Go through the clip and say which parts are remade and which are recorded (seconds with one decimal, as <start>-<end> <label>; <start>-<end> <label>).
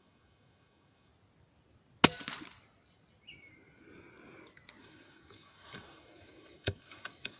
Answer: 0.0-1.1 remade; 1.1-4.8 recorded; 4.8-7.4 remade